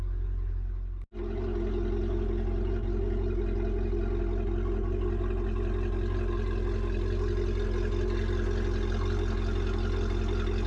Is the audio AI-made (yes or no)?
no